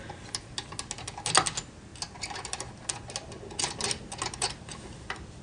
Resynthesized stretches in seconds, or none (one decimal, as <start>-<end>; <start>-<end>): none